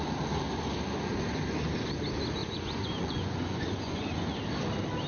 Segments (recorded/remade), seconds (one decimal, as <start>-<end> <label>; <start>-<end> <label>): 0.0-2.4 recorded; 2.4-4.4 remade; 4.4-5.1 recorded